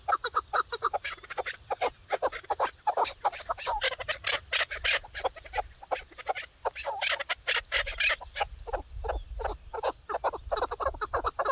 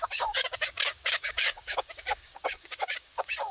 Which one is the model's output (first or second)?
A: second